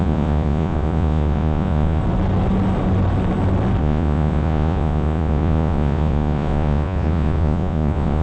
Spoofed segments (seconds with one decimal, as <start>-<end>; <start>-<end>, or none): 0.0-2.0; 3.8-8.2